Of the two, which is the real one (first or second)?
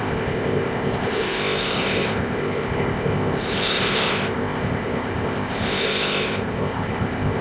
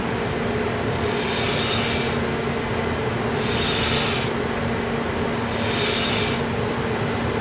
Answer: second